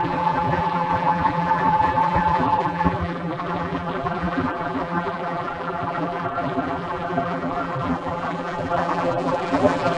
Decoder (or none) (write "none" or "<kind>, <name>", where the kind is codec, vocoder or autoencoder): vocoder, BigVGAN v2